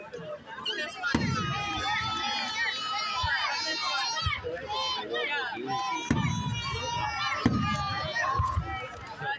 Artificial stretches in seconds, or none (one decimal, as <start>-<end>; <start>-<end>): 2.8-4.0; 7.9-8.6